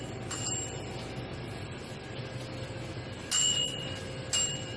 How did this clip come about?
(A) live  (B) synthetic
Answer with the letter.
A